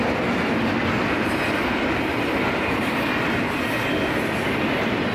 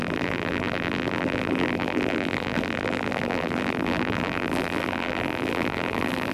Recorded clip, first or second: first